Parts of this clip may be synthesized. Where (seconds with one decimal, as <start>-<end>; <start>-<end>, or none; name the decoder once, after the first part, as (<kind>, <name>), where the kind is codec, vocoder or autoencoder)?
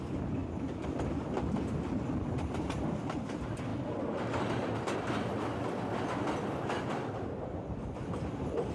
none